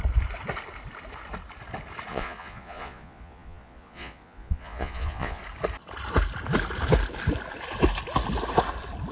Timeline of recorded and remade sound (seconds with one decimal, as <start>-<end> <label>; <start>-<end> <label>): 0.0-2.1 recorded; 2.1-5.4 remade; 5.4-9.1 recorded